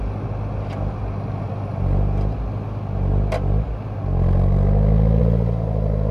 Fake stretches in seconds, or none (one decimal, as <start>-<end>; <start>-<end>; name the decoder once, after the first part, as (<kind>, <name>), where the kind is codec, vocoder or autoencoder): none